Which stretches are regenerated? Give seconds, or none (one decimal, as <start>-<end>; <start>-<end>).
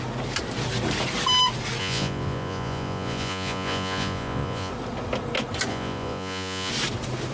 1.8-4.7; 5.7-6.7